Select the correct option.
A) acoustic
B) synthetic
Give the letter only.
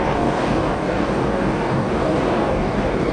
B